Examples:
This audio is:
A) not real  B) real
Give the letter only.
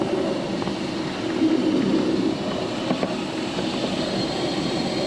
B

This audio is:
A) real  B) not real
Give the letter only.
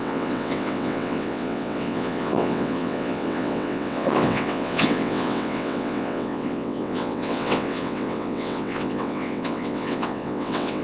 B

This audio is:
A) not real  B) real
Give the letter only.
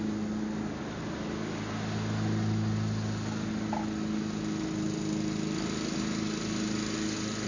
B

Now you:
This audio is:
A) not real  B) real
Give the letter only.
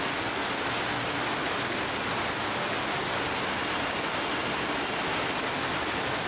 B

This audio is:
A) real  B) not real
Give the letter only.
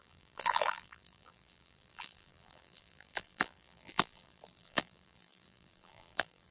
B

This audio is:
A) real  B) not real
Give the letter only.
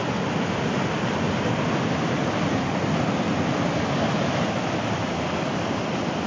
A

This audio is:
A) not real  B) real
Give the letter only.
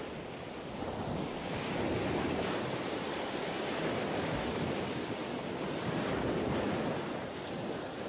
B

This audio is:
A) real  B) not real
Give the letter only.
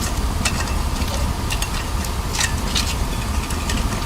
A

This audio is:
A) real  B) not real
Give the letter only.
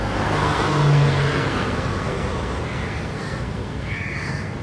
B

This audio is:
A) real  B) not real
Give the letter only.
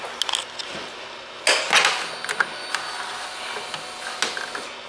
A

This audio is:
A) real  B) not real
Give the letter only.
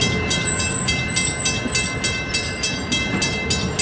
A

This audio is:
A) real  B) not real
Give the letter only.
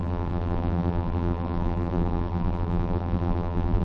B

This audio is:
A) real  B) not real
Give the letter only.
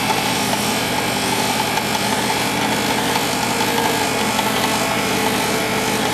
B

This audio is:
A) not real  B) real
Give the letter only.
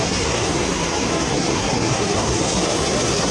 A